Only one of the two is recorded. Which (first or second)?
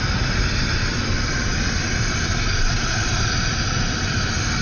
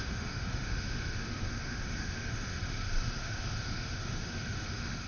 first